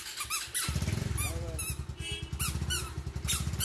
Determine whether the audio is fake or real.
real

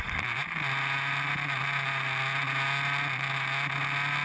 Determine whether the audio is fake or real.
real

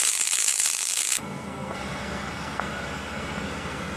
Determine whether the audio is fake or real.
fake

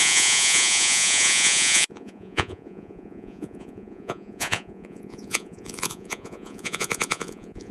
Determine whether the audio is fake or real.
fake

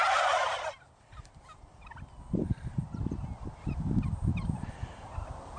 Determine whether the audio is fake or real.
real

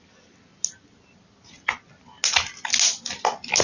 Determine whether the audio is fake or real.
real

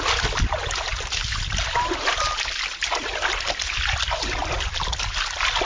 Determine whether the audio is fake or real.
real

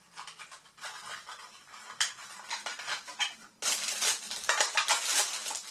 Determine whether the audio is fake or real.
real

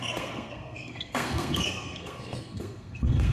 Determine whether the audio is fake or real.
fake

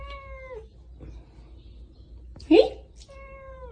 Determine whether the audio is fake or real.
real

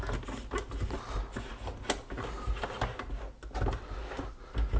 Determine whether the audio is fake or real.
real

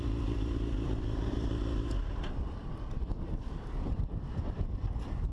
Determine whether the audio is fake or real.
real